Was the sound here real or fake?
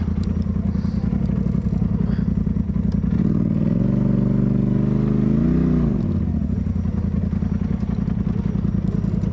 real